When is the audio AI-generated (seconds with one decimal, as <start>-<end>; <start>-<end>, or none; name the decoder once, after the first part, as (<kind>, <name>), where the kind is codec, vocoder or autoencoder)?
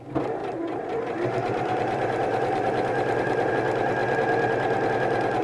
0.4-3.5 (vocoder, BigVGAN v2)